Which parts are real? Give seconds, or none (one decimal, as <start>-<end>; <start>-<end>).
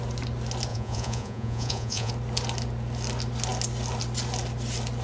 0.0-0.7; 2.1-5.0